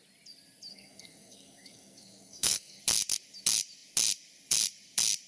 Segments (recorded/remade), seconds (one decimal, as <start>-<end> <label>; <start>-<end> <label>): 0.0-0.7 recorded; 0.7-2.8 remade; 2.8-5.3 recorded